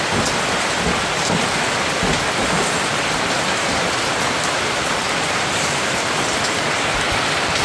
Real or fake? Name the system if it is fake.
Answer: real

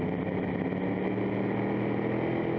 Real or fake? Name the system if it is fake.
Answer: real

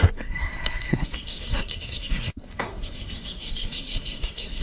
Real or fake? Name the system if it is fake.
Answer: fake, codec, SNAC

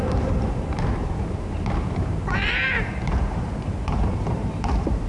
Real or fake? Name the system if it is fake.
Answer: fake, vocoder, BigVGAN v2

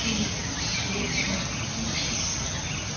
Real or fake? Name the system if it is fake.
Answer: real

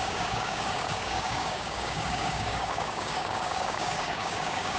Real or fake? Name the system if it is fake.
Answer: fake, codec, DAC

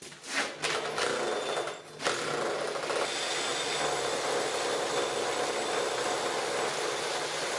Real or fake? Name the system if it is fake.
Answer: real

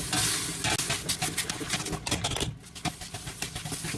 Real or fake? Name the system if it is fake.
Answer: real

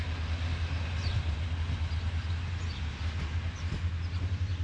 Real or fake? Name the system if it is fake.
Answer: real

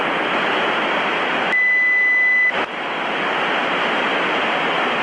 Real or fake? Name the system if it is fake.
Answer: real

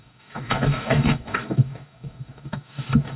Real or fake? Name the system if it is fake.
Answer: fake, codec, DAC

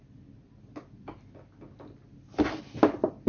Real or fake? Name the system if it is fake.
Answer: real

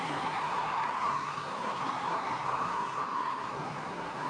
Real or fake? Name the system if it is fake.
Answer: fake, codec, SNAC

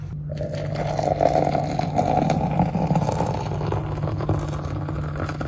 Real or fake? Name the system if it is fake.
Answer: real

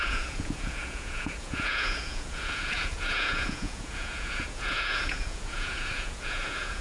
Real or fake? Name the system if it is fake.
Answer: fake, vocoder, Vocos